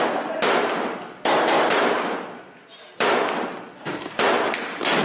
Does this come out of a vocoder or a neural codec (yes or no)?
no